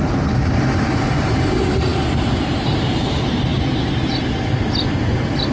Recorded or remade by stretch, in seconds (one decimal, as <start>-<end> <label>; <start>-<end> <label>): 0.0-5.5 recorded